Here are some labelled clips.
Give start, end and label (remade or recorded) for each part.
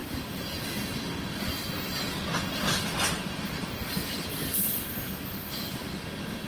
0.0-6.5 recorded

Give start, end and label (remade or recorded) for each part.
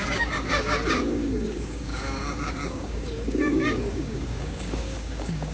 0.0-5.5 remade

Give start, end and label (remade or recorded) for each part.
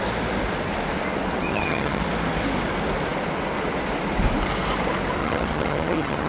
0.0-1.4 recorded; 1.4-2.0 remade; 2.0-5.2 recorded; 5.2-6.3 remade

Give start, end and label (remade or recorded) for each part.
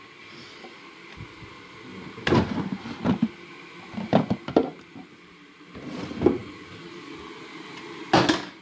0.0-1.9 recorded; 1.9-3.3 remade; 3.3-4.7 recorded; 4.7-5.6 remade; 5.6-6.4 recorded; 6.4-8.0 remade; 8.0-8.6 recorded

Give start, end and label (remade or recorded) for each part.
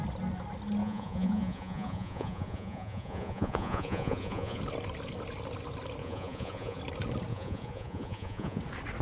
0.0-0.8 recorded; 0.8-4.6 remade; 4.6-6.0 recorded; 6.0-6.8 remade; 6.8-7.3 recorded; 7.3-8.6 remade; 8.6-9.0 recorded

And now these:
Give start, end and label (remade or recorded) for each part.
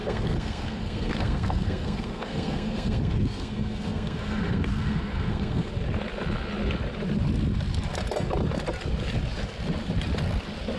0.0-5.7 remade; 5.7-10.8 recorded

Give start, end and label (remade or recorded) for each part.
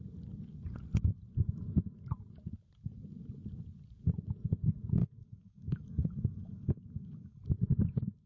0.0-5.0 recorded; 5.0-7.4 remade; 7.4-8.3 recorded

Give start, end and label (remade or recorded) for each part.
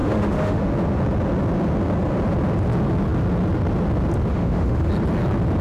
0.0-0.6 remade; 0.6-4.3 recorded; 4.3-4.9 remade; 4.9-5.6 recorded